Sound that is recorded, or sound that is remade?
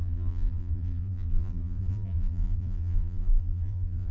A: remade